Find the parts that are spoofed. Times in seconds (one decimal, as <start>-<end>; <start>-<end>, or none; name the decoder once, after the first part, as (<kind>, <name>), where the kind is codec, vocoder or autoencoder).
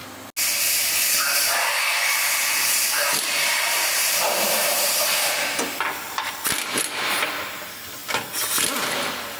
2.4-6.5 (vocoder, BigVGAN v2)